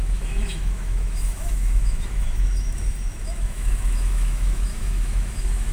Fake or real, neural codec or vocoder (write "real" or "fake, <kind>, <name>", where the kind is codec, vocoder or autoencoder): fake, autoencoder, DAC-VAE